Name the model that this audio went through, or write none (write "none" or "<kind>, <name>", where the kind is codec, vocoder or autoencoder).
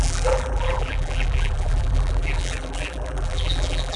vocoder, BigVGAN v2